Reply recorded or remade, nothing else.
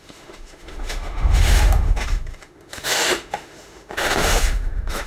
remade